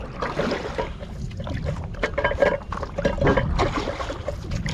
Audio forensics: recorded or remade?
recorded